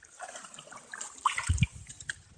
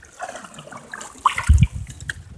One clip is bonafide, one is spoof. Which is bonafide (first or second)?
second